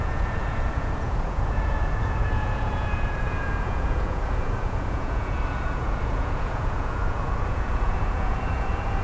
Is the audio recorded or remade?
remade